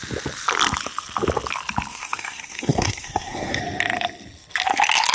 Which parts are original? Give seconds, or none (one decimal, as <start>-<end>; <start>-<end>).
0.0-1.9; 3.6-5.1